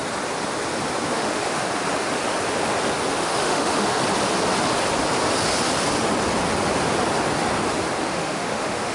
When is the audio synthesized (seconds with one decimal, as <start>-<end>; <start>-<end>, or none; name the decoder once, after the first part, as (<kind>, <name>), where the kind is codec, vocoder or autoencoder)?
1.1-1.5 (autoencoder, DAC-VAE); 3.1-4.0; 8.0-8.9